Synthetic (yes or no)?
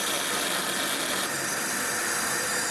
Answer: no